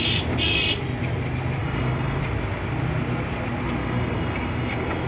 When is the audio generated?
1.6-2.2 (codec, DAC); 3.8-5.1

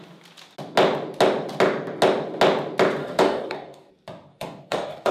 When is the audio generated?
3.0-3.9 (codec, DAC); 4.3-5.1